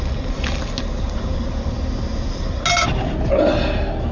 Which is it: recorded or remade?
recorded